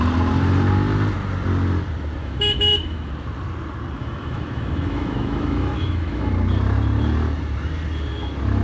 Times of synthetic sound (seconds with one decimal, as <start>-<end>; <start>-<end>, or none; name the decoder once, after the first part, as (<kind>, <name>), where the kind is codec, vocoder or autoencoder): 2.2-3.1 (autoencoder, DAC-VAE); 4.0-6.3